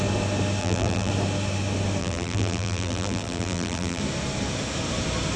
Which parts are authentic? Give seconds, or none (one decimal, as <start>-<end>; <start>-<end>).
0.0-0.6; 1.1-2.0; 4.0-5.4